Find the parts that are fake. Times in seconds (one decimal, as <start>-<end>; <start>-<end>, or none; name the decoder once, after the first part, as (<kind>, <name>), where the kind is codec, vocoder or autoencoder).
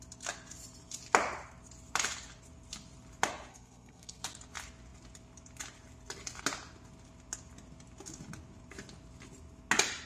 3.5-4.2 (codec, SNAC)